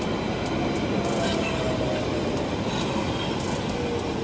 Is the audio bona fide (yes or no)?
yes